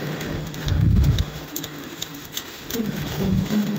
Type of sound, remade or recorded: remade